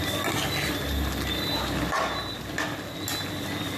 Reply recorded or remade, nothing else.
recorded